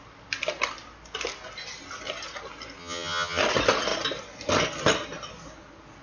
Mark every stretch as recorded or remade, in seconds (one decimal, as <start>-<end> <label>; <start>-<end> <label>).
0.0-2.8 recorded; 2.8-3.4 remade; 3.4-6.0 recorded